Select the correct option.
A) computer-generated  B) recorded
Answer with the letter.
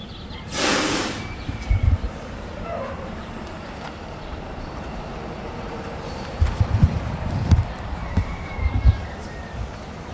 A